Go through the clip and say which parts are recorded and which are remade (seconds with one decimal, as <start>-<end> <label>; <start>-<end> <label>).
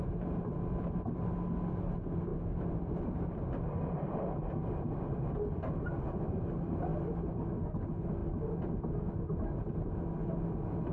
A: 0.0-10.9 recorded